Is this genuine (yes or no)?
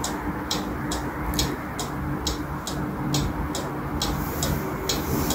yes